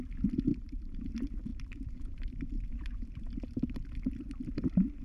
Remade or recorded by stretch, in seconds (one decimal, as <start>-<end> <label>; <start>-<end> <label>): 0.0-0.5 recorded; 0.5-1.0 remade; 1.0-1.5 recorded; 1.5-3.9 remade; 3.9-5.0 recorded